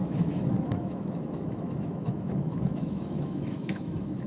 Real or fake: fake